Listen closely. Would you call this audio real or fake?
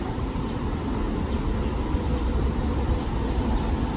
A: real